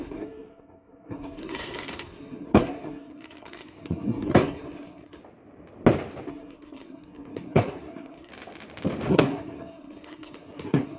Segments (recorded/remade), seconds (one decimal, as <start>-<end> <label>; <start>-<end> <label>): 0.0-5.2 remade; 5.2-6.3 recorded; 6.3-8.3 remade; 8.3-9.1 recorded; 9.1-11.0 remade